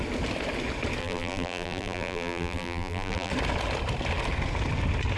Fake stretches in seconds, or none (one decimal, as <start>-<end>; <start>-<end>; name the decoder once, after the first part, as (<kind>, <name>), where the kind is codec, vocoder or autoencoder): 1.0-3.3 (vocoder, BigVGAN v2)

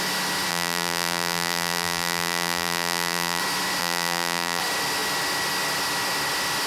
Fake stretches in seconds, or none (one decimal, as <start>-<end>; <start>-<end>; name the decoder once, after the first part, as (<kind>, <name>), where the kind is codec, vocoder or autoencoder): 0.5-3.4 (vocoder, BigVGAN v2); 3.8-4.6